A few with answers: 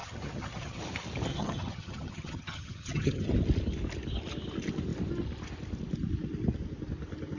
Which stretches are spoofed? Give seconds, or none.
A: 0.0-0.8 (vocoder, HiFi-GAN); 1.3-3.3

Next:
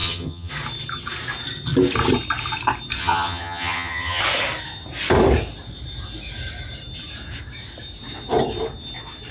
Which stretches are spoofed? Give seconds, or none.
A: 0.0-0.5 (vocoder, HiFi-GAN); 3.0-4.2

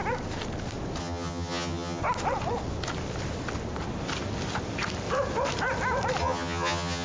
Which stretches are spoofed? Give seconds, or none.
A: 1.0-2.0 (vocoder, HiFi-GAN); 6.2-7.0

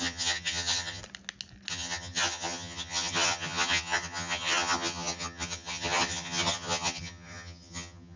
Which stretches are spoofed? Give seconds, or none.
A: 0.0-1.0 (vocoder, HiFi-GAN); 1.7-8.2